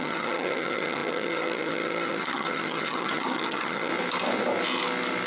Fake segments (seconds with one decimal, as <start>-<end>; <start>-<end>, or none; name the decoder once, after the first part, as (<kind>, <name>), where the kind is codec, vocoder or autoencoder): 0.0-3.9 (vocoder, HiFi-GAN)